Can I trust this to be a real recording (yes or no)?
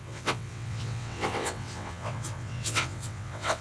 no